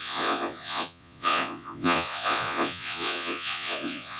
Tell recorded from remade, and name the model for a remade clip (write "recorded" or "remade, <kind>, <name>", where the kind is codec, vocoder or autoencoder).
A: remade, vocoder, Vocos